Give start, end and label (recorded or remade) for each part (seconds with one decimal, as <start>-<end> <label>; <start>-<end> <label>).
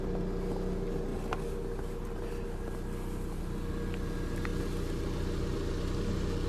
0.0-6.5 recorded